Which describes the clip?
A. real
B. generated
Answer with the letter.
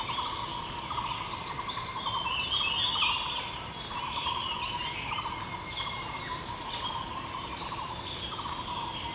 A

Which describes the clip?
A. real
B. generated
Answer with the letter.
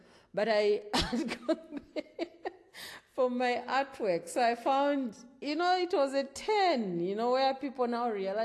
A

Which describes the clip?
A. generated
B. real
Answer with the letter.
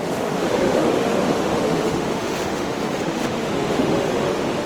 A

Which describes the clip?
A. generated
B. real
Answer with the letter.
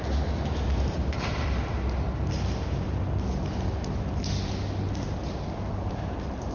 B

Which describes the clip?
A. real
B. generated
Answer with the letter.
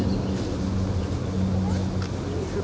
A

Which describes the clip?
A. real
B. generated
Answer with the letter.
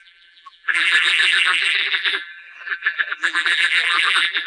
B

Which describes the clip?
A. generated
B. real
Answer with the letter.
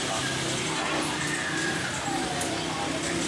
B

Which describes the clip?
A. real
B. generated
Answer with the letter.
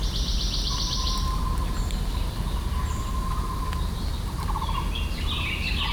A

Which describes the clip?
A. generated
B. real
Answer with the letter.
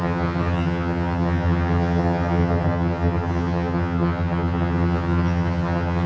A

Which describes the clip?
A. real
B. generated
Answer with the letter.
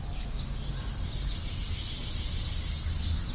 A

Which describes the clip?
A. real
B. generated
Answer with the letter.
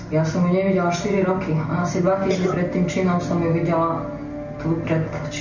A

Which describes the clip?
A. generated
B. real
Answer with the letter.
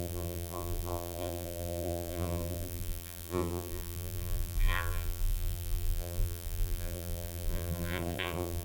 A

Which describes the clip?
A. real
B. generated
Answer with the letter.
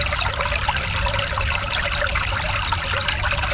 A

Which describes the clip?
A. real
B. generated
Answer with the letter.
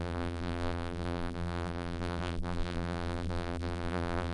B